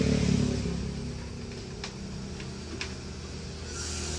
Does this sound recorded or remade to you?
recorded